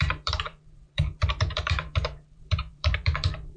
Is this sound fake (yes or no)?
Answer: yes